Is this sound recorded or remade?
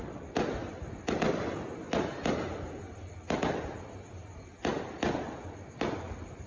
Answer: recorded